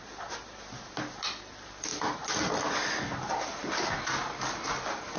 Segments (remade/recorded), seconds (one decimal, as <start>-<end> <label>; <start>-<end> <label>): 0.0-5.2 recorded